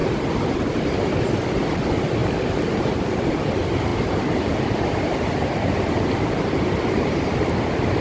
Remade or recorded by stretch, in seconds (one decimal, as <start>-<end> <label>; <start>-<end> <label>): 0.0-2.2 recorded; 2.2-3.3 remade; 3.3-3.9 recorded; 3.9-7.3 remade; 7.3-8.0 recorded